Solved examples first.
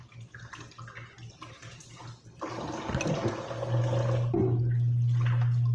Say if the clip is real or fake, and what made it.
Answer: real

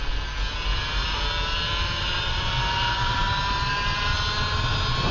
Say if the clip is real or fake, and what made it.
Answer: real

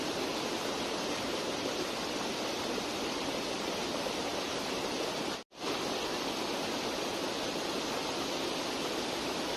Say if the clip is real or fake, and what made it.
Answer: real